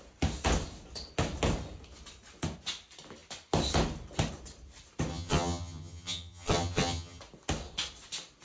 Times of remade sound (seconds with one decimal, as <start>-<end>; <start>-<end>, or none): 5.1-7.2